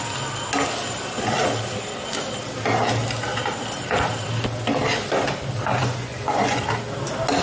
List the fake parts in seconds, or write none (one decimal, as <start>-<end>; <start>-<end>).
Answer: 5.7-6.6